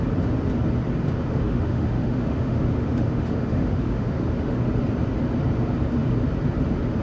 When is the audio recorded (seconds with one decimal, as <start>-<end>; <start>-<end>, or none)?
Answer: 0.0-1.3; 4.6-7.0